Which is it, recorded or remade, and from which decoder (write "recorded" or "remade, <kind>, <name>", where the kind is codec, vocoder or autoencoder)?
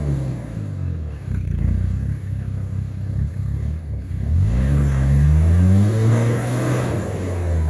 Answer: remade, codec, DAC